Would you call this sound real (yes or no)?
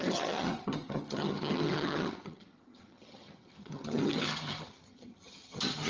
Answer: no